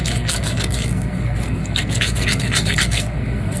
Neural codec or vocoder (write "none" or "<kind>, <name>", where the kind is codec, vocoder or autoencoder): codec, SNAC